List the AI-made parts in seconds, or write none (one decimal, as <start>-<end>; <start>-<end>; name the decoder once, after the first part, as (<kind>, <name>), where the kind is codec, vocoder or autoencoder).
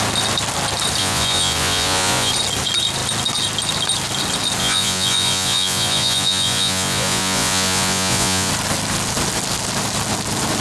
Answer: 1.0-2.3 (vocoder, Vocos); 4.6-8.5